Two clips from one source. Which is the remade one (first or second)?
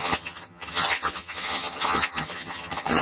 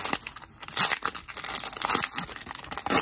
first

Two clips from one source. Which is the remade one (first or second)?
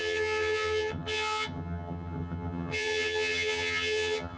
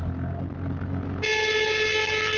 first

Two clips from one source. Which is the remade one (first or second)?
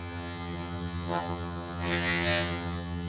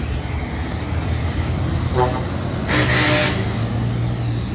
first